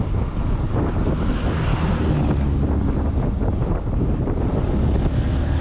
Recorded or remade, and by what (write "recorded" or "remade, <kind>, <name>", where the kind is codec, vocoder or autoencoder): recorded